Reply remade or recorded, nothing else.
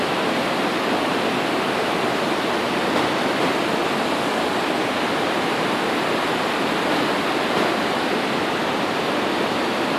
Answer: recorded